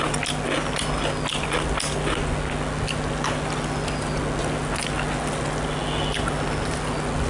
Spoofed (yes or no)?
no